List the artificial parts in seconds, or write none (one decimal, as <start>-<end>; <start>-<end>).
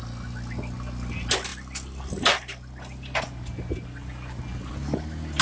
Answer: none